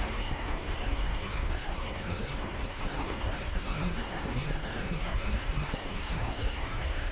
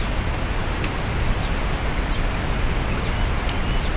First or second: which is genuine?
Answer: second